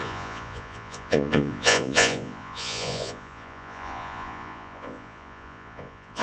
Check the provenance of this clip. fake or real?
fake